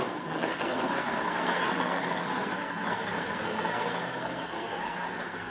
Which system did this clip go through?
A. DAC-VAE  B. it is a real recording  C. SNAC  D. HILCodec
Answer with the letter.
C